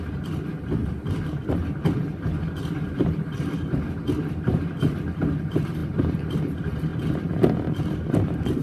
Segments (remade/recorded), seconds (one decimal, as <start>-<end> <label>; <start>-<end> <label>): 0.0-6.9 remade; 6.9-7.8 recorded; 7.8-8.6 remade